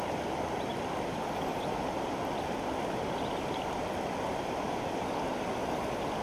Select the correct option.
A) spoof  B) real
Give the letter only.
B